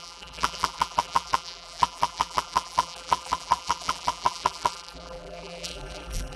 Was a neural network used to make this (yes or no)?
yes